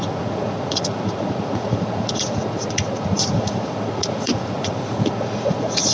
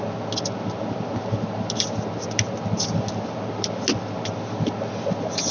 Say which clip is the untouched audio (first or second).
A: second